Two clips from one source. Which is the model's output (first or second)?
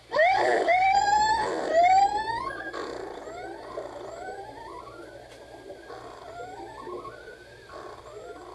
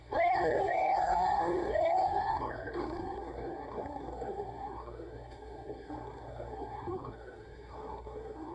second